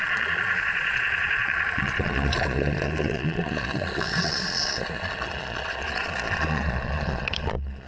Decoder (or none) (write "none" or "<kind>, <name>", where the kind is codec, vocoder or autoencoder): vocoder, Vocos